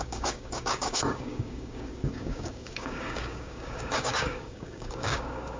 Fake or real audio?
fake